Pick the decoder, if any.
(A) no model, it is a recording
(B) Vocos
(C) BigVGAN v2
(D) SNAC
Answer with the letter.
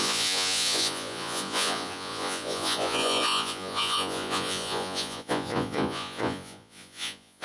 B